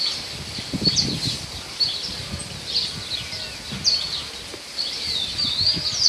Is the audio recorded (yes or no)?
yes